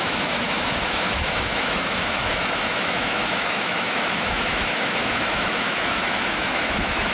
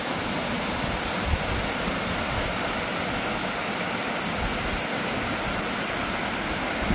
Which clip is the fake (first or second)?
first